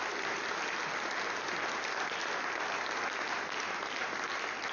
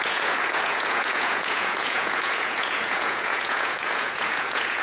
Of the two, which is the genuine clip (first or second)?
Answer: first